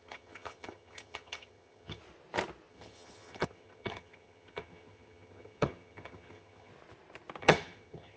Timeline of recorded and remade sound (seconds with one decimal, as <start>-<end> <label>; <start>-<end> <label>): 0.0-2.0 remade; 2.0-2.7 recorded; 2.7-6.7 remade; 6.7-7.4 recorded; 7.4-8.2 remade